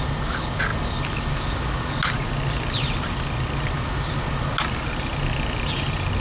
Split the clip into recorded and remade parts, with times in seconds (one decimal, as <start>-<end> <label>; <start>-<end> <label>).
0.0-6.2 recorded